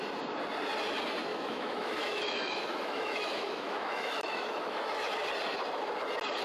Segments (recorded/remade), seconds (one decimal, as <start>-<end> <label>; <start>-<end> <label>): 0.0-1.3 recorded; 1.3-5.1 remade; 5.1-6.4 recorded